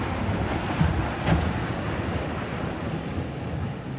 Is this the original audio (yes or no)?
yes